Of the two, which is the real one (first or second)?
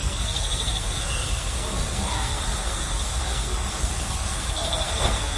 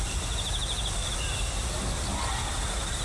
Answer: second